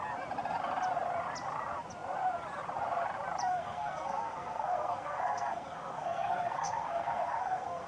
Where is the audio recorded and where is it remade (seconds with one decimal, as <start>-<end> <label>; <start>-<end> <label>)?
0.0-3.5 recorded; 3.5-7.9 remade